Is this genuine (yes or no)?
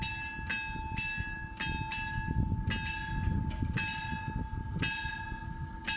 yes